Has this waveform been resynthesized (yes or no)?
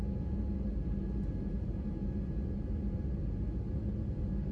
no